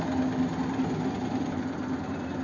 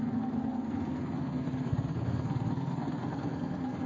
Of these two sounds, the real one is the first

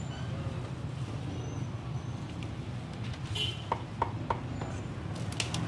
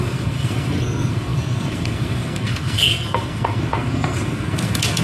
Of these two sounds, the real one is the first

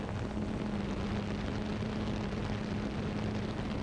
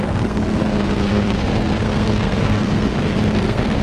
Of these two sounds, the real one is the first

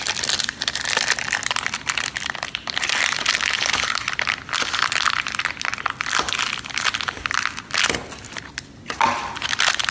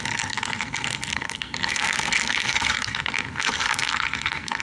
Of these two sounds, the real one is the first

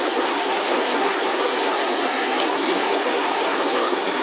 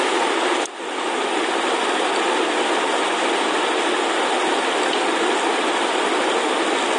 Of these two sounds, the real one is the second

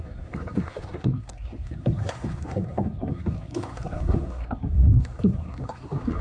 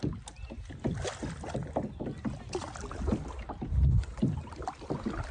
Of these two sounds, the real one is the second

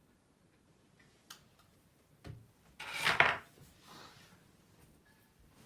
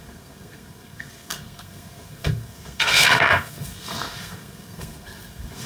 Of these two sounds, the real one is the first